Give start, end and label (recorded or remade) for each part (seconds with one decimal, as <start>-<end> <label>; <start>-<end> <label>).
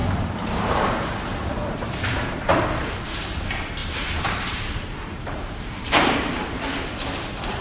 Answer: 0.0-2.3 remade; 2.3-3.8 recorded; 3.8-6.3 remade; 6.3-7.6 recorded